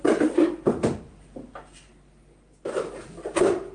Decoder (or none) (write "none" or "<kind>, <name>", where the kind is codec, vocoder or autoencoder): none